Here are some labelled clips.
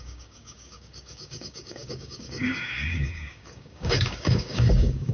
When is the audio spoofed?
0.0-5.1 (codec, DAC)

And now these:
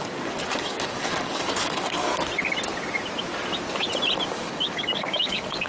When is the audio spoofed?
0.0-2.1 (codec, DAC); 4.3-5.7

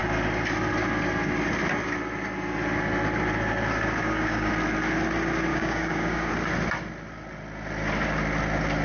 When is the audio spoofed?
4.0-4.5 (codec, DAC); 5.5-6.3

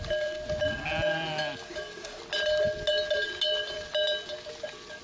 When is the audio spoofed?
1.6-2.2 (codec, DAC)